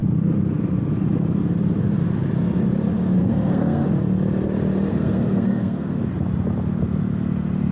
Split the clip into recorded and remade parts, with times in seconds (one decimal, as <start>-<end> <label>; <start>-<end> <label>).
0.0-3.2 recorded; 3.2-3.9 remade; 3.9-4.9 recorded; 4.9-6.0 remade; 6.0-7.7 recorded